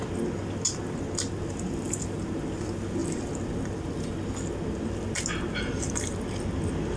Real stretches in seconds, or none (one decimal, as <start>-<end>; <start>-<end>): 0.0-7.0